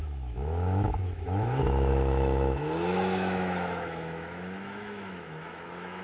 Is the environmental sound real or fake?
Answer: fake